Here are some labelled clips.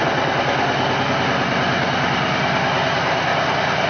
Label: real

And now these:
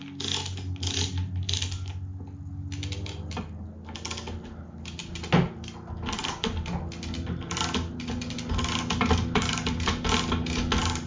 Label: real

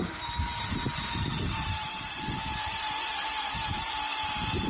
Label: fake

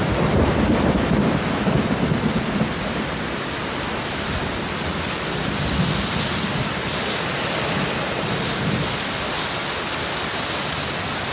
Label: real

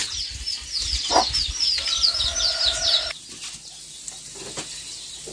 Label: real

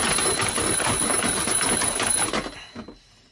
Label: real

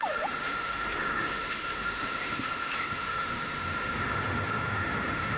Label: fake